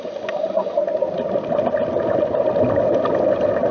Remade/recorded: recorded